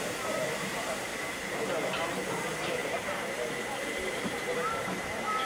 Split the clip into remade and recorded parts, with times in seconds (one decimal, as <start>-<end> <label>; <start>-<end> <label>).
0.0-1.1 remade; 1.1-2.3 recorded; 2.3-2.8 remade; 2.8-4.1 recorded; 4.1-5.5 remade